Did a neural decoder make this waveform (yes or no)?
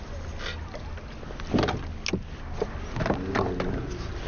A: no